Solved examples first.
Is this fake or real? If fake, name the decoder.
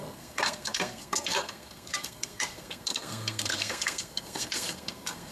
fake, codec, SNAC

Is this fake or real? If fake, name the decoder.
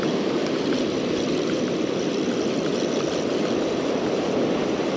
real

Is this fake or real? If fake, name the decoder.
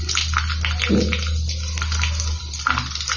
real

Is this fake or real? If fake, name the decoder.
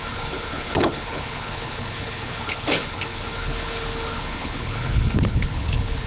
fake, codec, HILCodec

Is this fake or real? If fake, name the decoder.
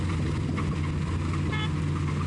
real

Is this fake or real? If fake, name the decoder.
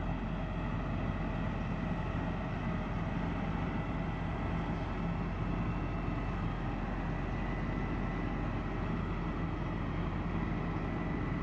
real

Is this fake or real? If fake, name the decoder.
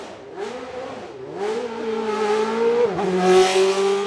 real